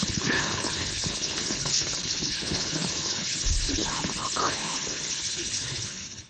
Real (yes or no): no